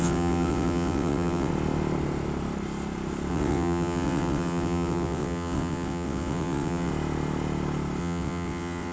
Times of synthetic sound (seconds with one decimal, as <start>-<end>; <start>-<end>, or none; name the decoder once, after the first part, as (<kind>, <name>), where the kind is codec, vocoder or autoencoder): 0.0-1.5 (vocoder, WaveNeXt); 3.3-6.9; 8.0-8.9